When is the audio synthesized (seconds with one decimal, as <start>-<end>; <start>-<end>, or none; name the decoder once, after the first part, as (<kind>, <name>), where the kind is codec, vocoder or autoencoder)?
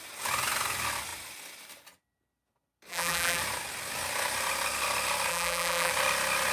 2.9-3.4 (vocoder, BigVGAN v2); 5.3-5.9